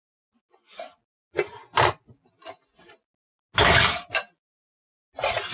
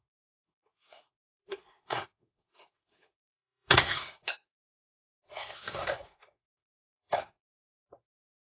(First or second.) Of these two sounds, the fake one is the second